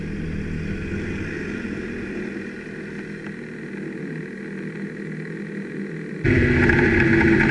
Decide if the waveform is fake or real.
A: real